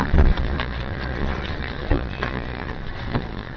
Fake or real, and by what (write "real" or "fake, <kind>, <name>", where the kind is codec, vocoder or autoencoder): fake, vocoder, Vocos